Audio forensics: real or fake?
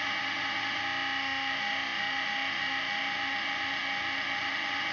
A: fake